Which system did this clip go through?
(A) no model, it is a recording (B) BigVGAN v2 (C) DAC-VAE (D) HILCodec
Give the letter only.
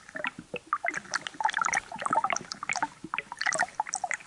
A